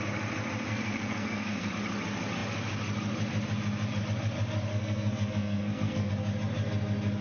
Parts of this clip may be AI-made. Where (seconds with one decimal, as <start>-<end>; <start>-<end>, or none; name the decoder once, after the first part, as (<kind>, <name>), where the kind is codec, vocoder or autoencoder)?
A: 0.7-1.7 (codec, SNAC); 4.7-6.1